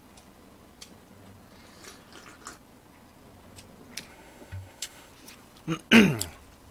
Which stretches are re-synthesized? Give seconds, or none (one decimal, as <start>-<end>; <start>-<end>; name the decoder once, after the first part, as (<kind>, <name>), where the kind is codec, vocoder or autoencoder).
4.1-5.1 (autoencoder, DAC-VAE)